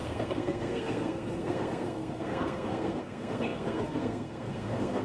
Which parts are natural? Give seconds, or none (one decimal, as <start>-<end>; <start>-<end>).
none